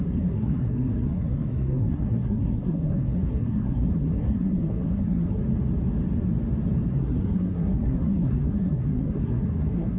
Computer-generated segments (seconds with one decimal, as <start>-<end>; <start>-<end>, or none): 0.0-5.4; 6.9-10.0